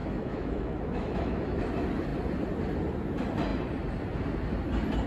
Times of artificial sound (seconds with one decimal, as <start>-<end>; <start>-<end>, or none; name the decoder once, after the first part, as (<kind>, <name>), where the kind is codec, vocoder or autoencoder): 0.0-1.6 (autoencoder, DAC-VAE)

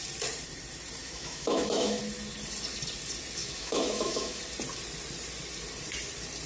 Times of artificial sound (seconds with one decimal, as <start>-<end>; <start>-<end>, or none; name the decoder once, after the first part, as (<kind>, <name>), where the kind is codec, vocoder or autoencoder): 1.0-2.0 (autoencoder, DAC-VAE); 3.4-4.4